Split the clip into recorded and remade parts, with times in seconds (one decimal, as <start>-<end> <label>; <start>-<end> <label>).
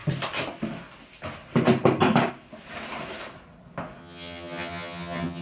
0.0-4.0 recorded; 4.0-5.4 remade